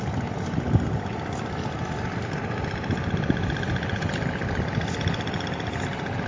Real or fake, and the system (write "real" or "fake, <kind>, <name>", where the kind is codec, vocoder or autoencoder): real